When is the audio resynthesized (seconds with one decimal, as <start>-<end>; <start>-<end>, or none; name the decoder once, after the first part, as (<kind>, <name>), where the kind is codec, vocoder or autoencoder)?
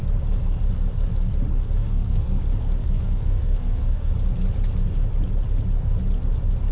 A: 1.8-2.4 (codec, SNAC); 2.8-4.1